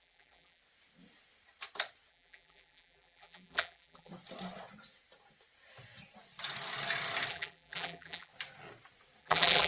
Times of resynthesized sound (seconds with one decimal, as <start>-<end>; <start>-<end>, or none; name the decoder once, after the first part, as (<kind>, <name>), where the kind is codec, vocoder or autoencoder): 0.0-0.6 (vocoder, BigVGAN v2); 2.1-4.1; 7.3-8.3; 9.2-9.7